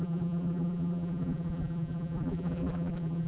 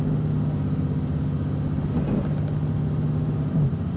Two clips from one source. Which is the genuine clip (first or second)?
second